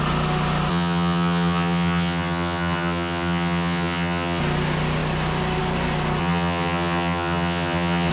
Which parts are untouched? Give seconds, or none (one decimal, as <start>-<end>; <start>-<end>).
0.0-0.7; 4.4-6.2